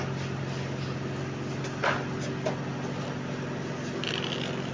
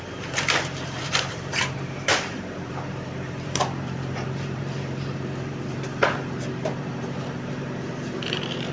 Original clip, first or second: first